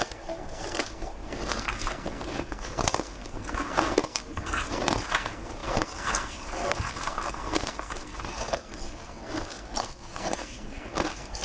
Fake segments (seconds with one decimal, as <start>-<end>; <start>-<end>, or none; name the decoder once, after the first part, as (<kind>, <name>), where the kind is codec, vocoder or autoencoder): 0.0-11.4 (codec, SNAC)